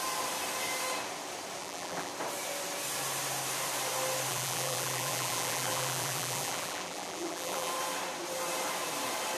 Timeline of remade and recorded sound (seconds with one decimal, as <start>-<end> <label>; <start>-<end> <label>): 0.0-1.6 recorded; 1.6-2.1 remade; 2.1-4.3 recorded; 4.3-7.7 remade; 7.7-9.4 recorded